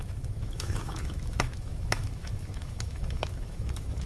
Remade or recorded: remade